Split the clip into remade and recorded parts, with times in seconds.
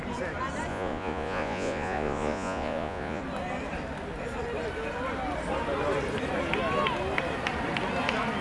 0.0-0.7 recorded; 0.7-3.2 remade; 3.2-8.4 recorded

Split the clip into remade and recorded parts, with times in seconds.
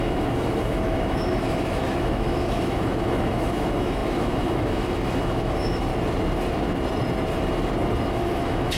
0.0-5.9 remade; 5.9-8.1 recorded; 8.1-8.8 remade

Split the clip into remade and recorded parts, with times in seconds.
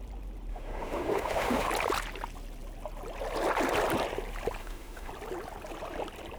0.0-0.5 recorded; 0.5-1.7 remade; 1.7-4.6 recorded; 4.6-5.1 remade; 5.1-6.4 recorded